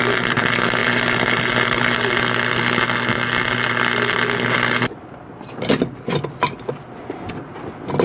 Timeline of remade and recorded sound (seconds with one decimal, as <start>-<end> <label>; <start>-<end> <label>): 0.0-8.0 recorded